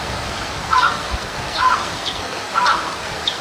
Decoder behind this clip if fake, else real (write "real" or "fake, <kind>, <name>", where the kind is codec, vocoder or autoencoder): fake, codec, SNAC